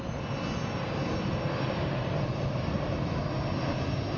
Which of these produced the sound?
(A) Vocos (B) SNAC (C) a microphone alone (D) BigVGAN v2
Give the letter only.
C